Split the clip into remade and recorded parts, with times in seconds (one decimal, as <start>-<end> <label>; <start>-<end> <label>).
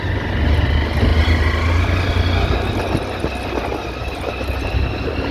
0.0-5.3 recorded